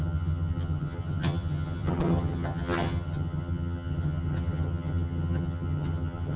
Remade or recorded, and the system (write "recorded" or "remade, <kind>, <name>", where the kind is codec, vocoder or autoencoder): remade, vocoder, HiFi-GAN